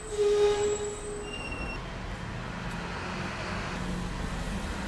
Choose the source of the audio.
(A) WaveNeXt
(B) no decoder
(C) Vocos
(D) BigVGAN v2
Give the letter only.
B